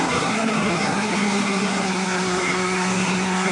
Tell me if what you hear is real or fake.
fake